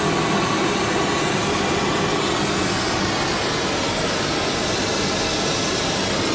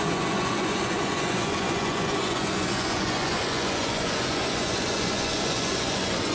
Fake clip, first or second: second